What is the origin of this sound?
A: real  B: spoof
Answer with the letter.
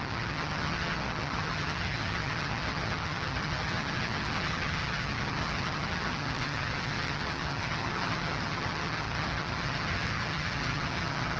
B